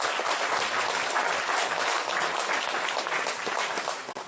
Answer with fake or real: real